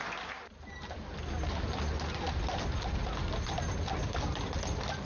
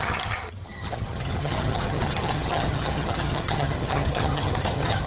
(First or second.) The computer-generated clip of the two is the second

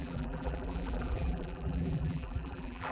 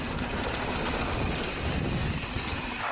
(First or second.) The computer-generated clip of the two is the first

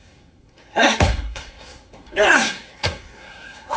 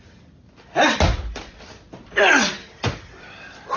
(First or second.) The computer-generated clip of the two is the first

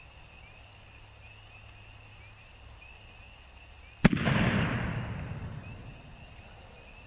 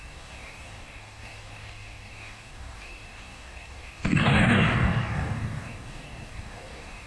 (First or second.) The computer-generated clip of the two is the second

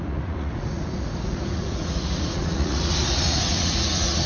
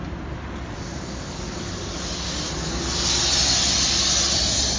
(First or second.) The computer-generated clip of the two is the first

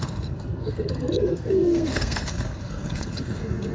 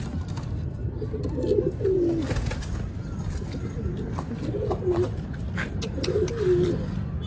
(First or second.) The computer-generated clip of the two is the first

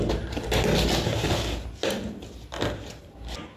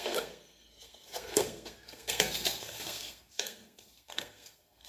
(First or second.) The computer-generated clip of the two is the second